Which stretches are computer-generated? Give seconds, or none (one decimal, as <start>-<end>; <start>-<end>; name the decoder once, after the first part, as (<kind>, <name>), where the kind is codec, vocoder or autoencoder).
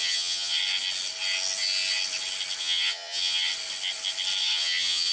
0.0-0.6 (vocoder, HiFi-GAN); 2.6-3.5; 4.4-5.1